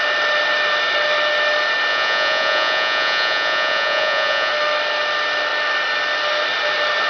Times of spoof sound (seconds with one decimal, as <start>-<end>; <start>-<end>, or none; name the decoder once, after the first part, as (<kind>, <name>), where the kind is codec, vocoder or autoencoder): 1.9-4.5 (vocoder, Vocos)